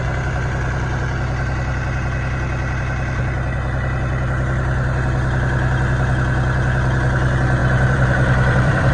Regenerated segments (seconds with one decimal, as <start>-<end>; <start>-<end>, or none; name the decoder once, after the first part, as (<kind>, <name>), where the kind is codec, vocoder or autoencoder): 7.6-8.9 (vocoder, BigVGAN v2)